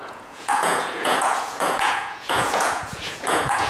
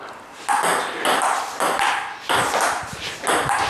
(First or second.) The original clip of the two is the second